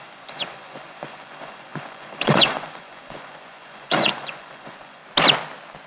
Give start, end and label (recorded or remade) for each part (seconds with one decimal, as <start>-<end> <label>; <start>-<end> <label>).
0.0-5.0 remade; 5.0-5.9 recorded